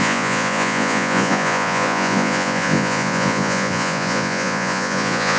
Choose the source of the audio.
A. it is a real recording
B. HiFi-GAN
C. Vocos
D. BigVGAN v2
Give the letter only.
C